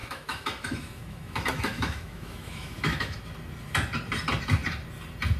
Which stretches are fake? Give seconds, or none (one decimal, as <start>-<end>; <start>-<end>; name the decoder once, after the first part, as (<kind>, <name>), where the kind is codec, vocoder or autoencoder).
0.0-3.2 (autoencoder, DAC-VAE)